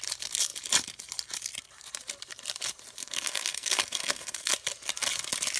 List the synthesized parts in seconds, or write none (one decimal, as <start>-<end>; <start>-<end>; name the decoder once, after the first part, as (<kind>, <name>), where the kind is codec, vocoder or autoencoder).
3.0-4.5 (codec, SNAC)